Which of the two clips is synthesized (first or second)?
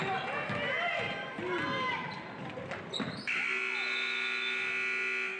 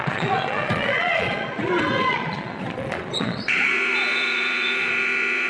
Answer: second